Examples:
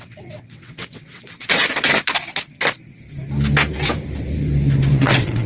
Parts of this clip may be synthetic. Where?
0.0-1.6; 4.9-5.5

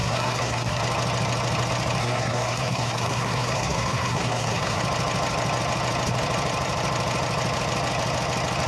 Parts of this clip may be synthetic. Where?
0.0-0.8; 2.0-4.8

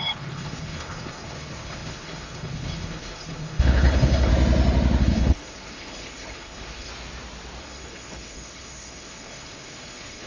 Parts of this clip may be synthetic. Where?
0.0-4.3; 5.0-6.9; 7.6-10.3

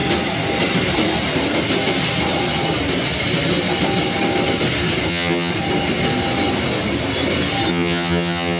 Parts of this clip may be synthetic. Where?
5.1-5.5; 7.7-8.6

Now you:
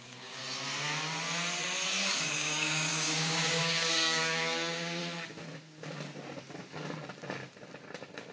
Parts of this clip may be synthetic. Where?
0.0-0.4; 2.1-5.0

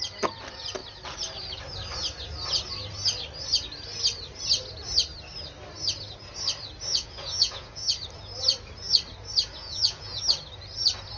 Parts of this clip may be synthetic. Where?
6.9-7.9; 9.6-10.2